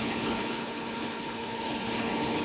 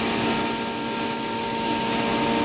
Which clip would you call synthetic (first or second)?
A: first